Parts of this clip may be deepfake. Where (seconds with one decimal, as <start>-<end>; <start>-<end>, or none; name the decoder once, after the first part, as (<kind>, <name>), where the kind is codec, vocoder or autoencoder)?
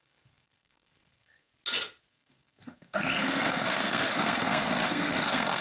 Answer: 0.0-1.5 (codec, SNAC); 2.1-5.6